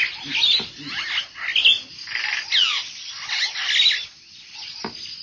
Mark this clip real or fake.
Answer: real